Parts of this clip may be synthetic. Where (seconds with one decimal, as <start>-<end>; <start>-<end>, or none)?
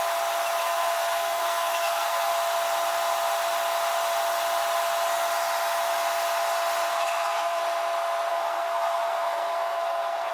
0.6-2.3; 6.9-7.6; 8.3-10.3